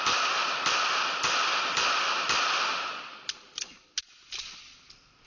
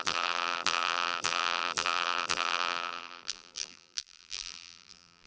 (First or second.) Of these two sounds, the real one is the first